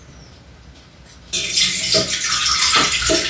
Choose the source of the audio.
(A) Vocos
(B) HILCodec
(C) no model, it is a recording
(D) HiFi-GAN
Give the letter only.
C